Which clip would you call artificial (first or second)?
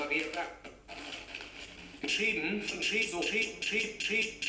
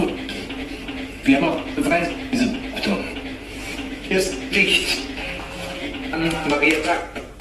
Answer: second